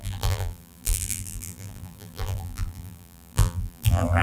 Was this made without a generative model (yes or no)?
no